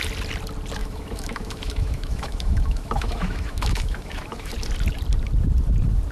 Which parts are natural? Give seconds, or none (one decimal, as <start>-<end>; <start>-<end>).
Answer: 0.0-0.8; 4.5-6.1